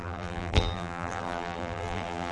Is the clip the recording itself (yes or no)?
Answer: no